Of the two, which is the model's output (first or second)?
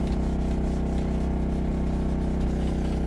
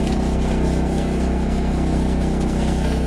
second